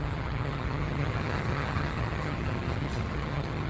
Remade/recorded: remade